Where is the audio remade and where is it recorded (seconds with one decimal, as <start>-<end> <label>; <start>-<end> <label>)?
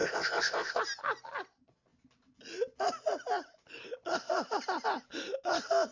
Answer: 0.0-0.8 remade; 0.8-5.9 recorded